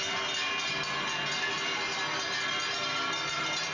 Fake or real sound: real